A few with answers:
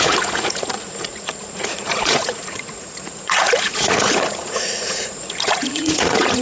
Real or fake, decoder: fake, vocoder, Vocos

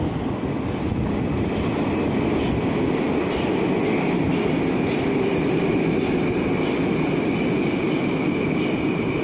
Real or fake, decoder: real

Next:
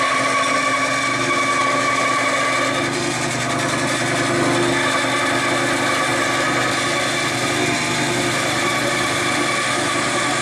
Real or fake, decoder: real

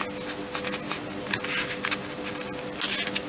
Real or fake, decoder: real